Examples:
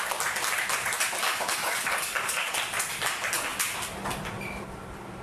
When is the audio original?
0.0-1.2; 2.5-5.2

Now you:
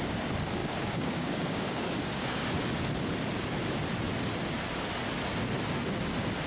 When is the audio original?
0.0-0.6; 2.5-6.5

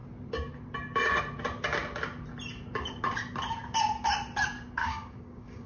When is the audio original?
0.0-4.8